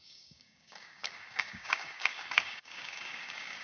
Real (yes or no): no